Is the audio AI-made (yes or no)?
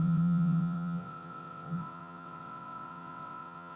yes